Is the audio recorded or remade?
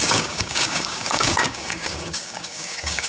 remade